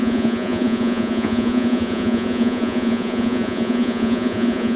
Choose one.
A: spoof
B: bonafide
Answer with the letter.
A